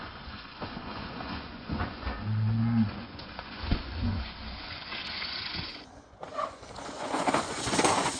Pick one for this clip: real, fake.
fake